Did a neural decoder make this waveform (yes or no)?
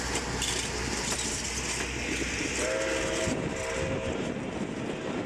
no